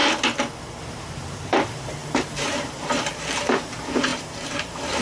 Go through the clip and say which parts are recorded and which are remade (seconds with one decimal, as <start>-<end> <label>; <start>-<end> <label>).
0.0-0.8 recorded; 0.8-5.0 remade